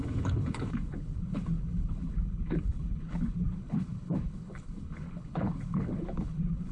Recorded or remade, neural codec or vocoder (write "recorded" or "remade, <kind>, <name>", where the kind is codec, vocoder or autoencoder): remade, codec, HILCodec